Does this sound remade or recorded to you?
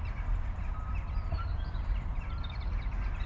recorded